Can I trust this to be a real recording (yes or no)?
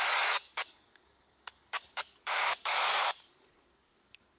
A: no